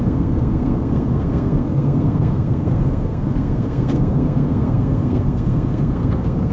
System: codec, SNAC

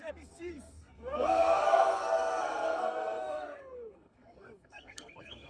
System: codec, SNAC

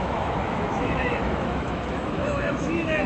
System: autoencoder, DAC-VAE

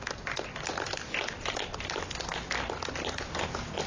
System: none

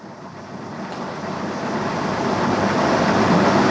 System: vocoder, BigVGAN v2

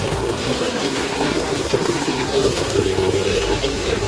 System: codec, SNAC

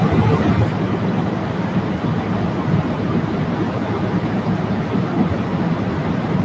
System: none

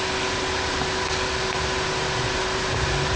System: none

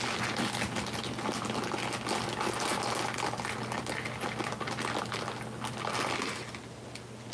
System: none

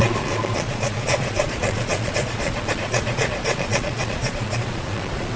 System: vocoder, Vocos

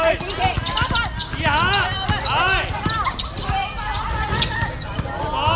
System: none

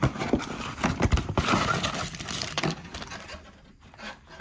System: none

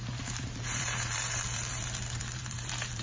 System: vocoder, BigVGAN v2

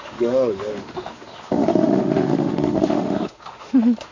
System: autoencoder, DAC-VAE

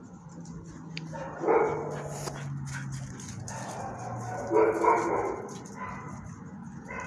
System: none